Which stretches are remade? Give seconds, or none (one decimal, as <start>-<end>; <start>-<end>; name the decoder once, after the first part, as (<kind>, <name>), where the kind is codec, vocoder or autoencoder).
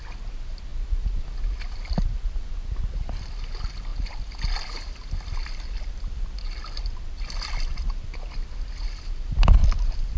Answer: none